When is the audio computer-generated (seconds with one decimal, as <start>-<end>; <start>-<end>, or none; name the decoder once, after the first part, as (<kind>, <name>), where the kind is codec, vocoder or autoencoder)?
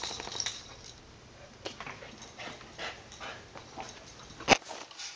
0.5-2.0 (vocoder, BigVGAN v2)